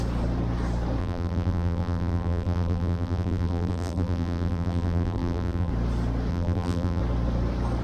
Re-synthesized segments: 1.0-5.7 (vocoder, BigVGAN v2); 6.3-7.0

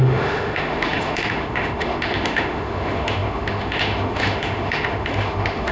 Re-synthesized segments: 0.0-5.7 (autoencoder, DAC-VAE)

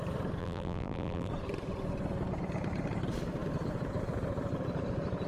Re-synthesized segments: 0.4-1.3 (vocoder, BigVGAN v2)